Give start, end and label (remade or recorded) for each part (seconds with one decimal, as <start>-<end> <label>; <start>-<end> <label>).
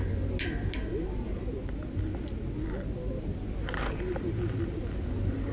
0.0-5.5 recorded